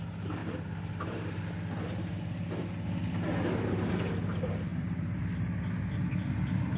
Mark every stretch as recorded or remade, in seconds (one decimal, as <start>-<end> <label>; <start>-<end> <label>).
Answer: 0.0-0.4 recorded; 0.4-1.4 remade; 1.4-4.7 recorded; 4.7-5.2 remade; 5.2-6.8 recorded